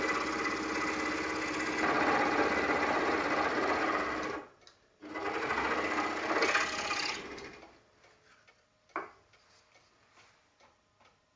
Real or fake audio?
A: real